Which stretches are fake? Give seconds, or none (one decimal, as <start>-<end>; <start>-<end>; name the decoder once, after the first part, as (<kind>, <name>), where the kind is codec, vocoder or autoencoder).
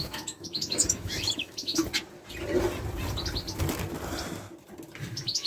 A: 0.0-1.8 (autoencoder, DAC-VAE); 5.1-5.5